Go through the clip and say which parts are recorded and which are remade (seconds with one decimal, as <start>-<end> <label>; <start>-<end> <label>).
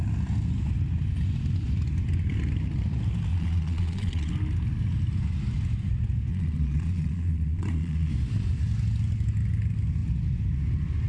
0.0-3.3 recorded; 3.3-4.3 remade; 4.3-6.3 recorded; 6.3-8.1 remade; 8.1-11.1 recorded